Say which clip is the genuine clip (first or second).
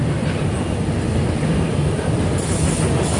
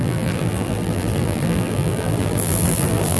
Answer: first